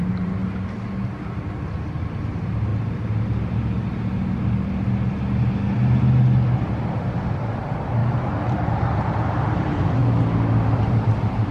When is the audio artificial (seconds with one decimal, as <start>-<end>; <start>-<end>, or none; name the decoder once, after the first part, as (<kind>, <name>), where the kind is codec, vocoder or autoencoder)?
0.0-0.4 (vocoder, BigVGAN v2); 2.1-2.7; 7.2-8.0; 9.0-10.0; 10.8-11.5